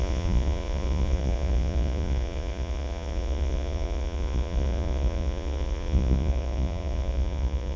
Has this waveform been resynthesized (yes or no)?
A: yes